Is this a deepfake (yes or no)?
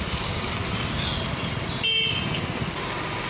no